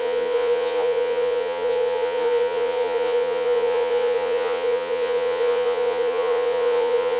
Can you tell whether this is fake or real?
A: fake